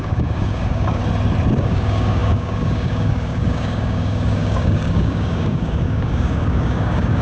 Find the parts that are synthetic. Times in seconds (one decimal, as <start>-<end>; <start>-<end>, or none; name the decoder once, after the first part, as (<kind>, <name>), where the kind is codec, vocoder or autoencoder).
0.0-1.0 (codec, DAC); 1.6-7.2